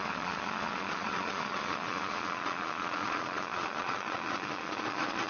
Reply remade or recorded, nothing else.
remade